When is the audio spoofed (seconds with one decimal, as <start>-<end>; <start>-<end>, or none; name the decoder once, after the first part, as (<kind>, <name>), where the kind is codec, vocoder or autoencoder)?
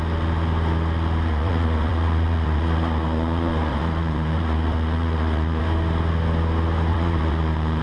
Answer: 1.3-5.6 (vocoder, Vocos); 6.9-7.8